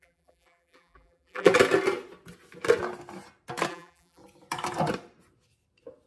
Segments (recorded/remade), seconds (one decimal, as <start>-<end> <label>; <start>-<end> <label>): 0.0-1.5 remade; 1.5-3.7 recorded; 3.7-4.2 remade; 4.2-6.1 recorded